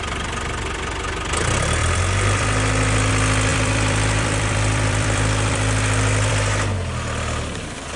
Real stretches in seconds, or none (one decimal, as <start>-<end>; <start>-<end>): 0.0-1.8; 3.1-3.5; 6.3-8.0